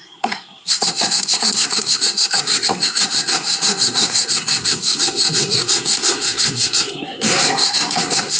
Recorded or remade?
remade